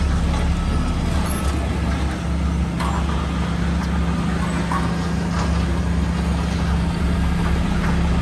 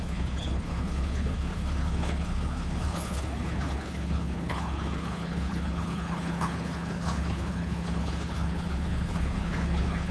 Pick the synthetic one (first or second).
second